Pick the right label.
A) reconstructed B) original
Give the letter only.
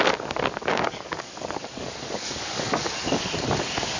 A